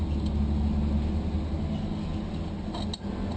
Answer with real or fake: real